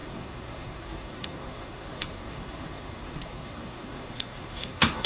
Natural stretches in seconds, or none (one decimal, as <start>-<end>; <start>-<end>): none